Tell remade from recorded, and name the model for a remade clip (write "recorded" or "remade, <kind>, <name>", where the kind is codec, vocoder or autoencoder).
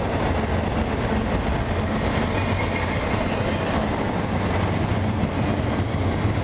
recorded